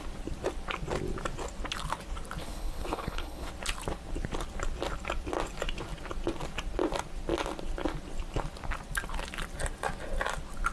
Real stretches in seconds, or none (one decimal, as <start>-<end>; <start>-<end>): 0.0-2.4; 3.5-10.7